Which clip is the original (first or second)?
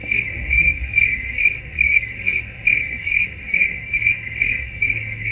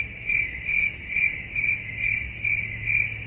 second